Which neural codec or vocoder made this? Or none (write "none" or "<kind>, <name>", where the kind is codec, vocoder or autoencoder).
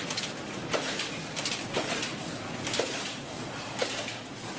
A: none